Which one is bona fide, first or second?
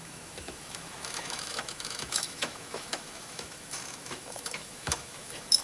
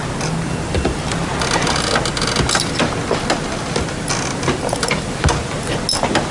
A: second